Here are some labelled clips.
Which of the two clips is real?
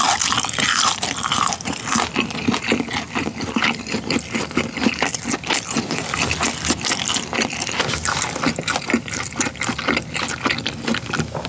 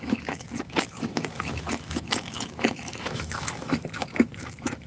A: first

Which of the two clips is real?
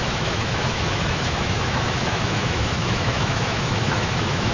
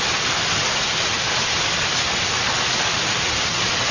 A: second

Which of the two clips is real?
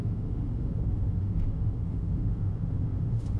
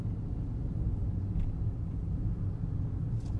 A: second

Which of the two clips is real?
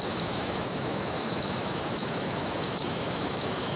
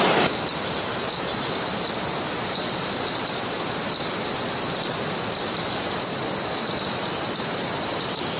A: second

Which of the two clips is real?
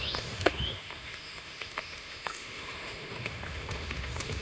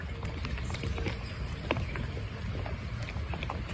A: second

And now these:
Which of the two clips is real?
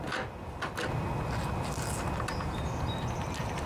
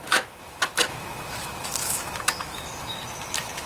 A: first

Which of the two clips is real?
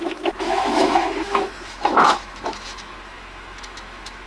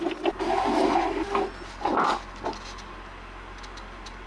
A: second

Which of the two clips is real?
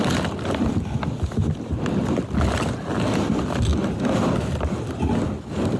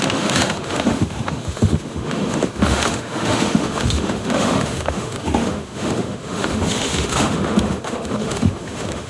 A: first